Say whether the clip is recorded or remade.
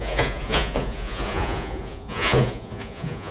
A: remade